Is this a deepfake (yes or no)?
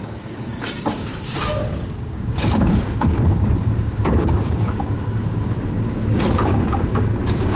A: yes